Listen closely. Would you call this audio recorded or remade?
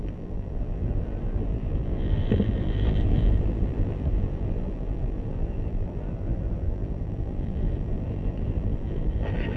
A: remade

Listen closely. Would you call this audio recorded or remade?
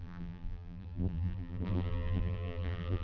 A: remade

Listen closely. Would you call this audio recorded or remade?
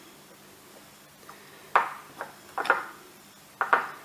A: recorded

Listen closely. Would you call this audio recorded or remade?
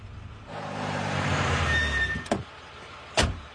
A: remade